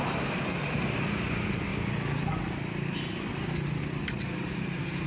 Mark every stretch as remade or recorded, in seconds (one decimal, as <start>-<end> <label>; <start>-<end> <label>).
0.0-5.1 recorded